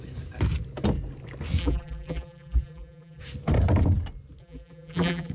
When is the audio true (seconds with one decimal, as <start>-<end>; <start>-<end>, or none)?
0.0-1.6; 3.2-4.4